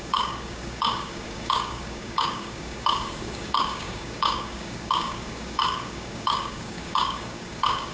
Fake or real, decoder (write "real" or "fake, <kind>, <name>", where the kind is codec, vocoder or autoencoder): fake, codec, DAC